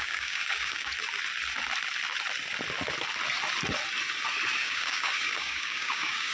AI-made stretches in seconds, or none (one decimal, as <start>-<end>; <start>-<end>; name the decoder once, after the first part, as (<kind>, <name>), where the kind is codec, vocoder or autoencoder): 0.0-0.9 (codec, DAC); 4.6-6.3